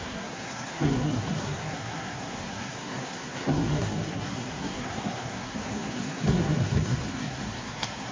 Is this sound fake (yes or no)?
yes